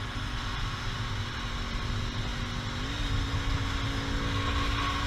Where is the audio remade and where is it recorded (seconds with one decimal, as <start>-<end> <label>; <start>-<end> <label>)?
0.0-5.1 recorded